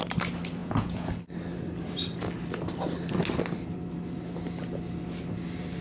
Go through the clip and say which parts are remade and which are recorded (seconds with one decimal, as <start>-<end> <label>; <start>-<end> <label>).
0.0-0.6 recorded; 0.6-1.1 remade; 1.1-5.8 recorded